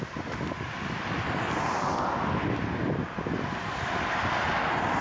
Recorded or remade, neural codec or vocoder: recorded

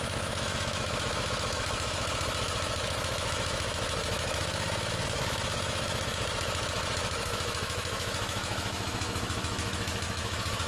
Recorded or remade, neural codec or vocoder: remade, autoencoder, DAC-VAE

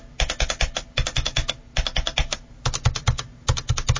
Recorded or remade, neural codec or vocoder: recorded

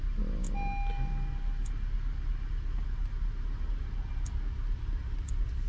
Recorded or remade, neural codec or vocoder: recorded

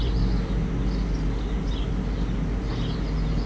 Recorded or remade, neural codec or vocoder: recorded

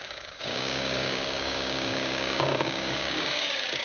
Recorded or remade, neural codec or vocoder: remade, codec, DAC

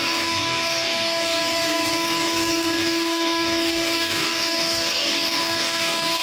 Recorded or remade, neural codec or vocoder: remade, codec, DAC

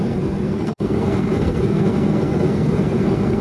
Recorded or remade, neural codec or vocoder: remade, codec, SNAC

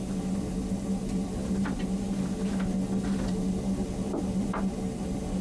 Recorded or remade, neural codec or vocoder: recorded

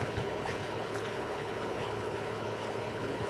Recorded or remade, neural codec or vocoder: remade, codec, HILCodec